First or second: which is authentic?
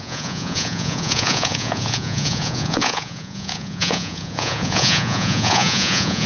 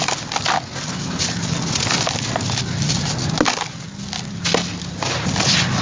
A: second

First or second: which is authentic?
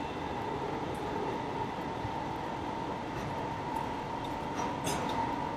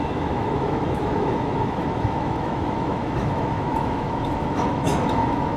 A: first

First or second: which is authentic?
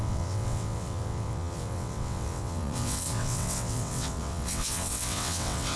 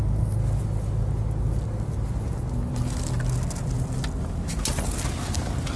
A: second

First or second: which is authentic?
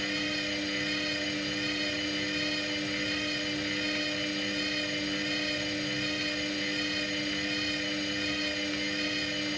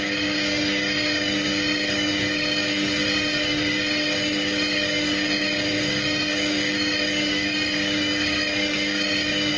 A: first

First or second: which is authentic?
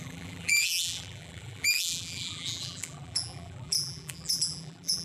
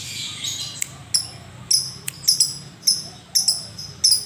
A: second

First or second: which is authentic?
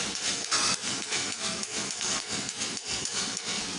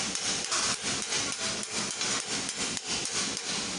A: second